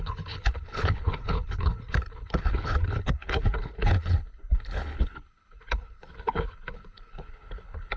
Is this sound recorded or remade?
remade